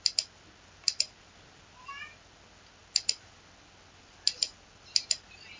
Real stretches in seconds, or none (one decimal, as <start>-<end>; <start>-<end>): 0.0-5.6